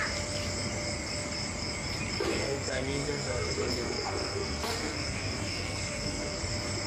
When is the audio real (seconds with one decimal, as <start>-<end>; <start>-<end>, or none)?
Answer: 0.0-2.3; 6.4-6.9